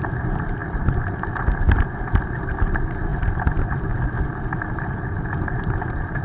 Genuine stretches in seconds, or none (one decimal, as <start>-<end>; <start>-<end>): 0.0-6.2